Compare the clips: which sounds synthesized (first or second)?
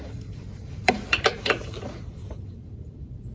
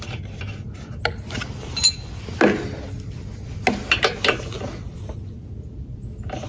first